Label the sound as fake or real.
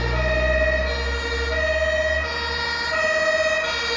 real